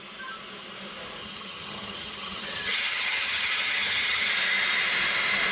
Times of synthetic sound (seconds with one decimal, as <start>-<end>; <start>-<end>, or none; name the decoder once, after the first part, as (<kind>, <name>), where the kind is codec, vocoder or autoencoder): 1.2-4.3 (vocoder, HiFi-GAN)